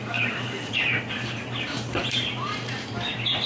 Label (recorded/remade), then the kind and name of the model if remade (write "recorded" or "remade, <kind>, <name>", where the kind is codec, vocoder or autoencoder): remade, vocoder, BigVGAN v2